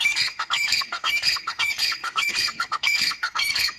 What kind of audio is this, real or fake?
fake